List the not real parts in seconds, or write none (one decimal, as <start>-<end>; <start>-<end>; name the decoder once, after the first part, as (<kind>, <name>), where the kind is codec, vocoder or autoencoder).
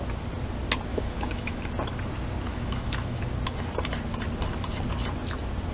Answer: 0.9-1.6 (autoencoder, DAC-VAE); 2.5-3.2